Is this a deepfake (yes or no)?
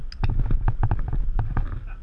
no